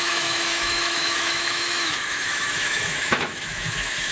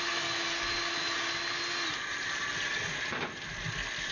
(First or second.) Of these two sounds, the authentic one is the second